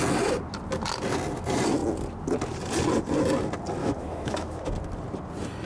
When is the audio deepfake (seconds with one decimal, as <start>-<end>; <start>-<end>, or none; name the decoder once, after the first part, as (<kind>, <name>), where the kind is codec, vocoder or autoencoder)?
3.8-4.6 (autoencoder, DAC-VAE)